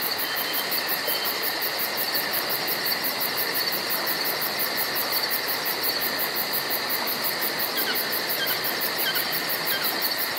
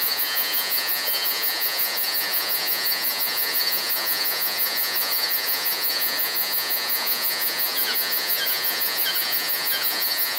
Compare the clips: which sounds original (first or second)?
first